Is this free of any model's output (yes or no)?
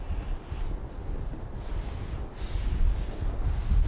yes